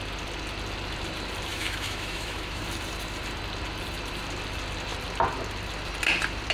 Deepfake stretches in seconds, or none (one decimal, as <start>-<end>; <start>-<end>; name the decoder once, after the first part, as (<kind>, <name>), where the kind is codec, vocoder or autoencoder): 1.5-2.6 (autoencoder, DAC-VAE)